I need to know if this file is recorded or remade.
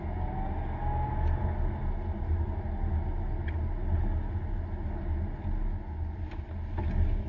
recorded